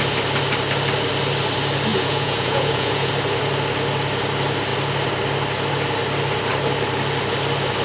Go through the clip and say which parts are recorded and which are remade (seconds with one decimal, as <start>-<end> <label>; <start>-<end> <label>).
0.0-1.9 recorded; 1.9-3.1 remade; 3.1-7.8 recorded